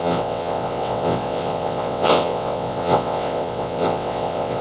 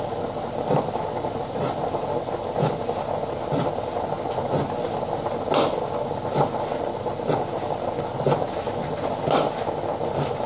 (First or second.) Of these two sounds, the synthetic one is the first